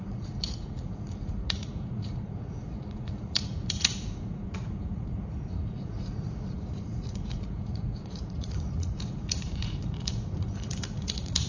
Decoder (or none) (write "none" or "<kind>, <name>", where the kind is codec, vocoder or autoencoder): vocoder, Vocos